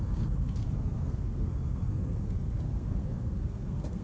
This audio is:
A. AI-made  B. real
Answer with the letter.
A